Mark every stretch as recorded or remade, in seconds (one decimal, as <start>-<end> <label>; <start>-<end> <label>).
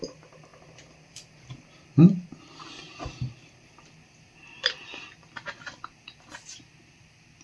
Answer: 0.0-7.4 recorded